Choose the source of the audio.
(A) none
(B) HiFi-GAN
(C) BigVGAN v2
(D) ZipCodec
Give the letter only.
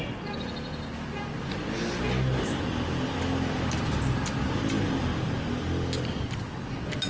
A